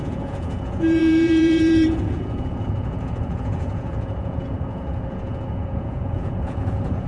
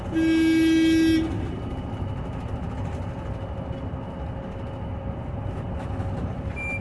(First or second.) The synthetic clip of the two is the first